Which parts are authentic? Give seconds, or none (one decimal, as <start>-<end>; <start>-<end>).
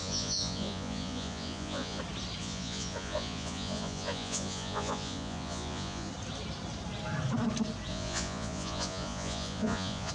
2.0-2.4; 6.1-7.9